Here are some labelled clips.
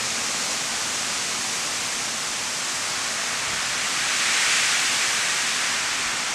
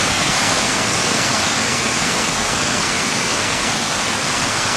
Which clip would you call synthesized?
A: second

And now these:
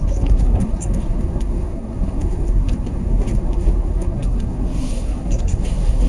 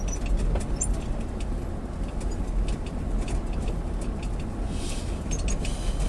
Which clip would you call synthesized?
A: first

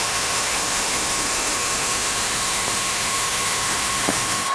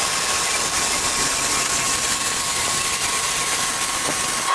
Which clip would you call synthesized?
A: first